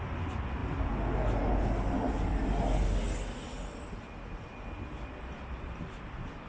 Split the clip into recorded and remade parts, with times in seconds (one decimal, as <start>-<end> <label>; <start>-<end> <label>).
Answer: 0.0-6.5 recorded